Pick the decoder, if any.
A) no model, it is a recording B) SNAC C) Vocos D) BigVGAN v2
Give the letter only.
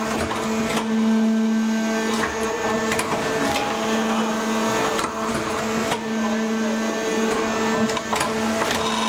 A